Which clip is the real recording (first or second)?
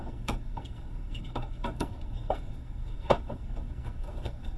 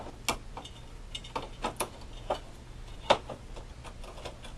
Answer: second